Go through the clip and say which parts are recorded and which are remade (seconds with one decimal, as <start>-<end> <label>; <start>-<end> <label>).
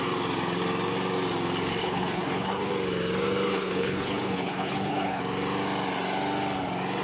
0.0-1.8 recorded; 1.8-2.7 remade; 2.7-3.5 recorded; 3.5-5.2 remade; 5.2-7.0 recorded